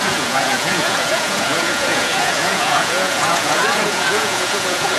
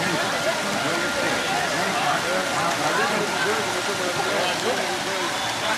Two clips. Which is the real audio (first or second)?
second